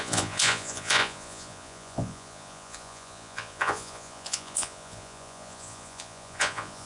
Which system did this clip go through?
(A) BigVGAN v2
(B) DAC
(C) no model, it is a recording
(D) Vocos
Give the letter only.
D